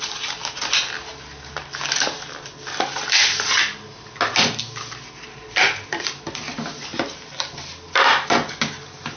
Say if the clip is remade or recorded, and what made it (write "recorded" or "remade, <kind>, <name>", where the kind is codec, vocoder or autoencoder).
recorded